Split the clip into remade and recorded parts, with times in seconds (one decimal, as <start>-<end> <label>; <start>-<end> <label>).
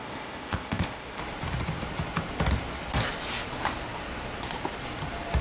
0.0-1.2 remade; 1.2-5.4 recorded